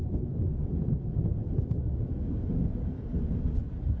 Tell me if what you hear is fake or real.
real